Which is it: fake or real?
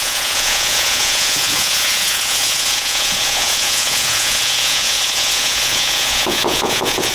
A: fake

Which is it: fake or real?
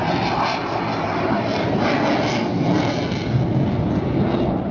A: real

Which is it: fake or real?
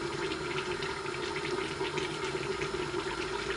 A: real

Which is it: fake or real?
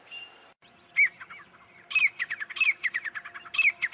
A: real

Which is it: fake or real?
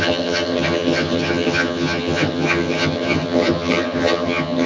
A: fake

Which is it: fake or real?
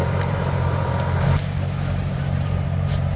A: fake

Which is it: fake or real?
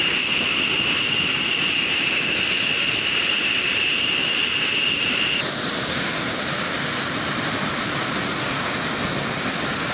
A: real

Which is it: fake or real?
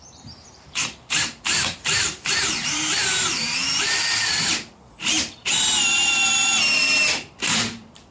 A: fake